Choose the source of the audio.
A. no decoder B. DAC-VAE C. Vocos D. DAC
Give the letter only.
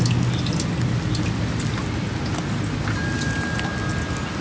A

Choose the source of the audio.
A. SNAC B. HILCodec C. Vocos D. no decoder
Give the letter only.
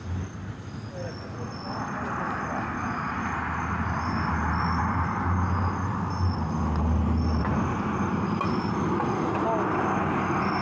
D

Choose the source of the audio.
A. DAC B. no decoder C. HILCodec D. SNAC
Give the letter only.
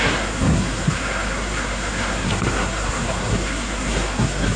D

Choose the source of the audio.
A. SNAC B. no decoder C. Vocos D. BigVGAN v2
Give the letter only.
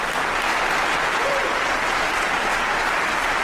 B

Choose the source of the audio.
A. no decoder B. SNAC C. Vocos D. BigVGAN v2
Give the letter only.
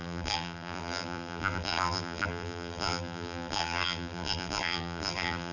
D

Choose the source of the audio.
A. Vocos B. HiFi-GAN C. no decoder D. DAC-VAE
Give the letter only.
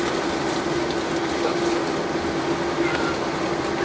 C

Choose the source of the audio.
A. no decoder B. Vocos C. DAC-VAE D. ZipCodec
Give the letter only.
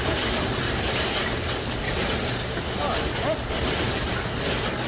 A